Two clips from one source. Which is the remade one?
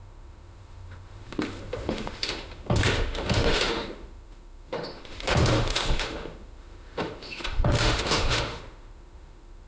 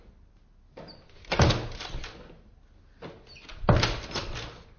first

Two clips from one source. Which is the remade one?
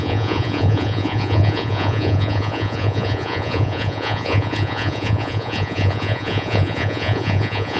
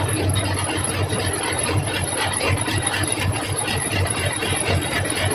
first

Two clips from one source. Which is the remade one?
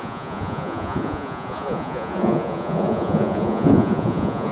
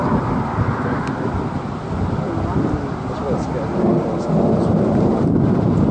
first